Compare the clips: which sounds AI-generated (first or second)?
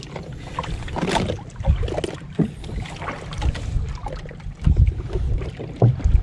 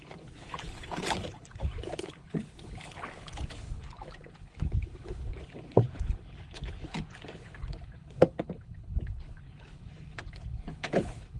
second